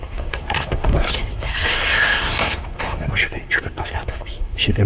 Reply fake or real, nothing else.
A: fake